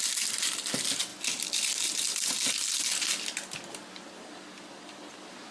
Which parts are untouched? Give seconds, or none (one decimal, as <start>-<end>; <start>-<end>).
0.0-5.5